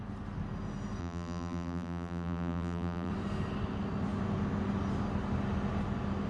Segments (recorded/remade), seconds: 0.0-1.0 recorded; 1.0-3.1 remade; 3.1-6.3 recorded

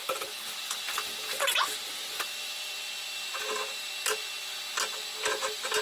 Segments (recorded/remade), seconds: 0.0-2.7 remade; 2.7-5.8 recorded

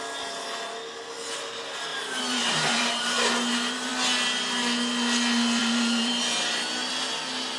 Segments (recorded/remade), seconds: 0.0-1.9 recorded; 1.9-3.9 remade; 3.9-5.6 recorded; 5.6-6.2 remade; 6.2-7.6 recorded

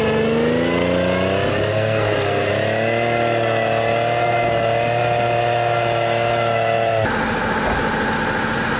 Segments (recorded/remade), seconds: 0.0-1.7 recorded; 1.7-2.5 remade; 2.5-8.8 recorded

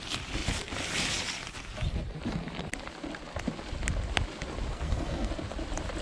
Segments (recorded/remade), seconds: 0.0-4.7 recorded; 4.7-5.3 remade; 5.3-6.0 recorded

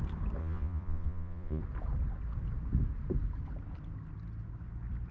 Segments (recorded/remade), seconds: 0.0-0.4 recorded; 0.4-1.6 remade; 1.6-5.1 recorded